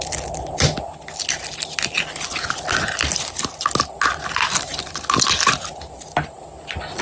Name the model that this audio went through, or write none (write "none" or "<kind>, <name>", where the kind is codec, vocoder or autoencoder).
none